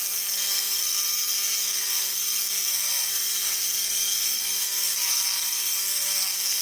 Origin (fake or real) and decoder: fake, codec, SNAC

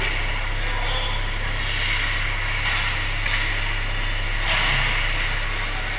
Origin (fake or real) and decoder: real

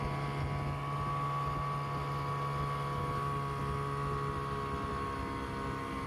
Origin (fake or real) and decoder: real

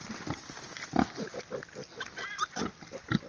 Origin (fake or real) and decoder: real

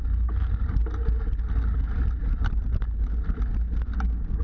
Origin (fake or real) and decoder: real